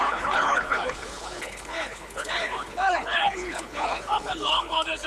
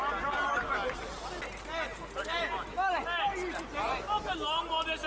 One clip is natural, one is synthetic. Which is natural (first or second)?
second